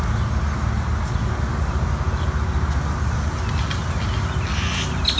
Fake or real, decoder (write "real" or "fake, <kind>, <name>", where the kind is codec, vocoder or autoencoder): real